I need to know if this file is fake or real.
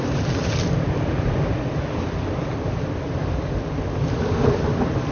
real